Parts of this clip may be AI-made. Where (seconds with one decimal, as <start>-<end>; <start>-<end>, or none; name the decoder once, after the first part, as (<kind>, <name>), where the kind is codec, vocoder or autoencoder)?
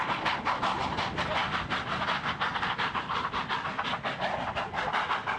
none